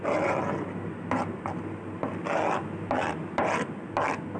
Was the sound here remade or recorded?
recorded